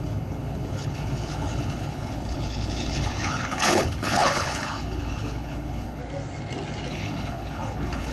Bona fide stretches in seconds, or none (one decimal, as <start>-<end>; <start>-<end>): 6.0-6.9